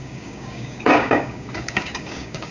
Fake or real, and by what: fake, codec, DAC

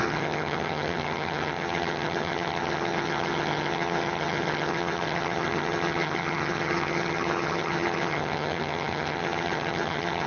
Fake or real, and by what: fake, vocoder, HiFi-GAN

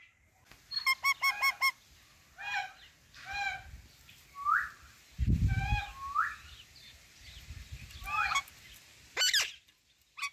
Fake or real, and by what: real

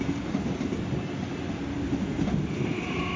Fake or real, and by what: real